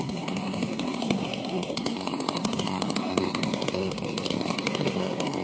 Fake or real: fake